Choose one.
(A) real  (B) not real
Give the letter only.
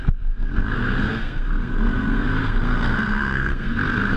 B